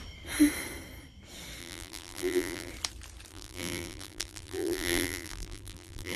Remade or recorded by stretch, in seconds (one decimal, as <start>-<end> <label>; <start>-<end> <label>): 0.0-1.6 recorded; 1.6-2.7 remade; 2.7-3.3 recorded; 3.3-6.2 remade

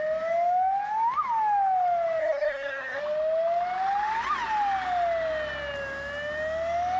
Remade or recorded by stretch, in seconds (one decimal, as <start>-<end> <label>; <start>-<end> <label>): 0.0-2.2 recorded; 2.2-3.0 remade; 3.0-7.0 recorded